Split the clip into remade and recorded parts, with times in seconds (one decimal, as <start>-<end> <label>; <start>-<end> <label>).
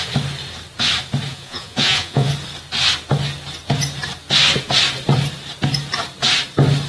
0.0-1.3 recorded; 1.3-2.3 remade; 2.3-6.9 recorded